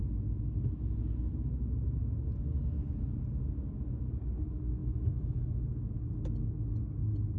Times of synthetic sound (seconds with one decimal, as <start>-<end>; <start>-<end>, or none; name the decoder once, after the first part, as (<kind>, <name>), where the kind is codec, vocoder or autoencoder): 4.8-5.9 (autoencoder, DAC-VAE)